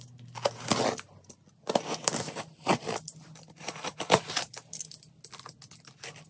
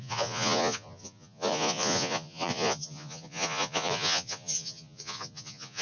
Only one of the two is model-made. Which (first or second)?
second